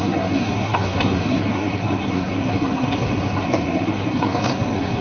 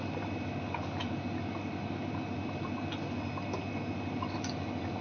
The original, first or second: second